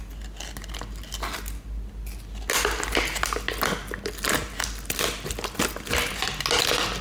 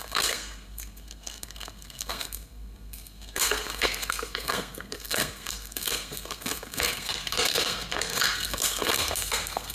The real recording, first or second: first